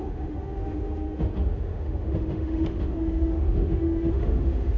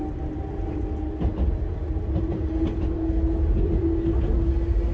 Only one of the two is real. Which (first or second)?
second